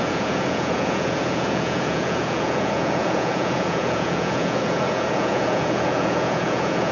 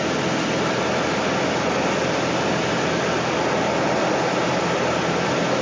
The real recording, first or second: second